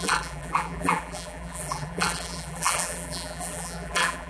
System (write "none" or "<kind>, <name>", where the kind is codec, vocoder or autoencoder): vocoder, BigVGAN v2